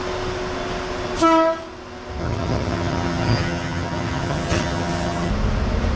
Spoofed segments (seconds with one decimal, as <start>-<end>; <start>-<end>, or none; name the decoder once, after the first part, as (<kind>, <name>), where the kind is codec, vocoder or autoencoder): 2.2-5.3 (vocoder, HiFi-GAN)